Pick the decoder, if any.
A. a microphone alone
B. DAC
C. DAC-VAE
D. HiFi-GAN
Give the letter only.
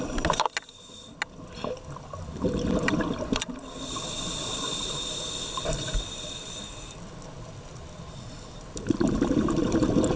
A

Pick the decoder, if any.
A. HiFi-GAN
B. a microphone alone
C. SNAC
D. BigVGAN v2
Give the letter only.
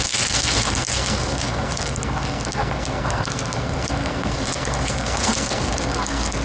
C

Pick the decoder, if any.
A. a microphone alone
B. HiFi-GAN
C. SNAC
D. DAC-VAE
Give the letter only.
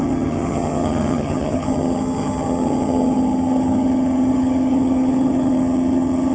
B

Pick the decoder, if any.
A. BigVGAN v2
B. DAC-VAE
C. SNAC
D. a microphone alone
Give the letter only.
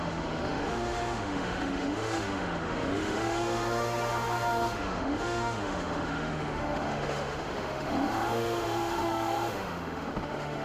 B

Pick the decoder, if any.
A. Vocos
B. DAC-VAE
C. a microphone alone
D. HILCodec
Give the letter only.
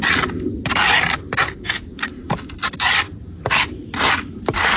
C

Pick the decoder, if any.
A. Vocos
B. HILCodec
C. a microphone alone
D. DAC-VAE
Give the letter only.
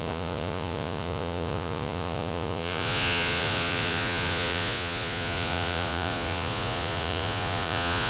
A